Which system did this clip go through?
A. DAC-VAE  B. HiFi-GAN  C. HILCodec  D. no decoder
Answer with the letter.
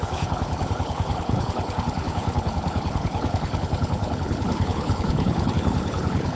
C